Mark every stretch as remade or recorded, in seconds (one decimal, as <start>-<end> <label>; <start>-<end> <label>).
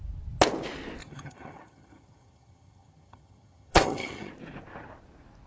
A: 0.0-1.0 recorded; 1.0-4.3 remade; 4.3-5.5 recorded